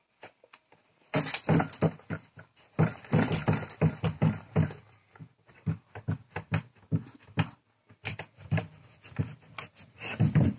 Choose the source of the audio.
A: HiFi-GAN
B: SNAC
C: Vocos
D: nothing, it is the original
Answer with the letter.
D